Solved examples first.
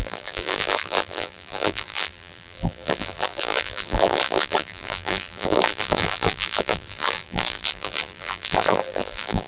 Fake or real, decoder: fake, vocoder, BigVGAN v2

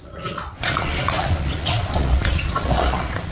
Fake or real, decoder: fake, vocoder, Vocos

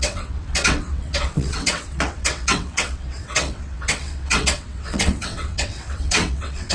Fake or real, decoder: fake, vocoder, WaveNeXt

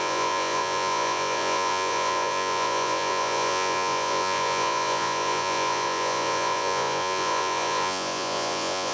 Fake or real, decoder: fake, vocoder, Vocos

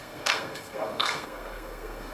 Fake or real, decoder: fake, codec, SNAC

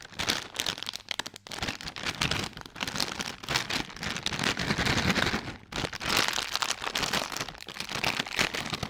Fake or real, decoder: real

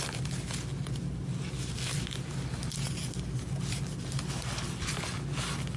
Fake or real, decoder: real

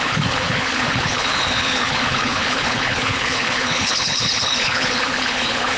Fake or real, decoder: fake, codec, HILCodec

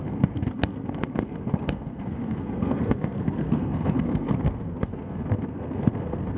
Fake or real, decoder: fake, codec, SNAC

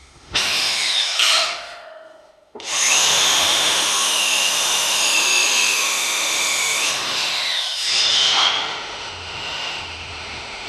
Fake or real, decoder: fake, autoencoder, DAC-VAE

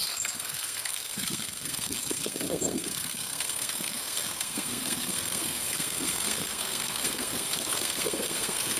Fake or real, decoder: fake, codec, SNAC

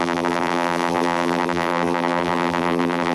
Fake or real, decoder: fake, vocoder, BigVGAN v2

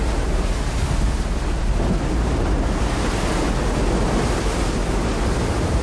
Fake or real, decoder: real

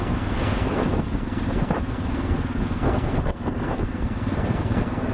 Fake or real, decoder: fake, codec, SNAC